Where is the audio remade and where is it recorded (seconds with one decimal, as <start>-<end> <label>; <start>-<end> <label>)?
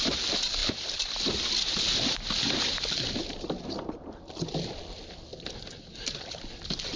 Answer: 0.0-7.0 recorded